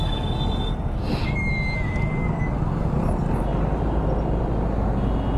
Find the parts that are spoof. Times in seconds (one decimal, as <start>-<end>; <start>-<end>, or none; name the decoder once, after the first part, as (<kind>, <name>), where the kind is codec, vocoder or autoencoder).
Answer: none